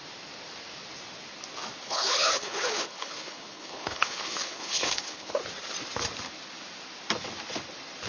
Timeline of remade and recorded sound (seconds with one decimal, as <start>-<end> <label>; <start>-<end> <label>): 0.0-1.8 recorded; 1.8-5.4 remade; 5.4-8.1 recorded